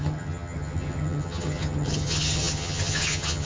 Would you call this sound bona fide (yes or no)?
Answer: no